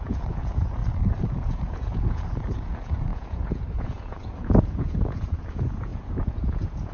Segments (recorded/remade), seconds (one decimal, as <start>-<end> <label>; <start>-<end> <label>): 0.0-0.8 remade; 0.8-1.3 recorded; 1.3-6.9 remade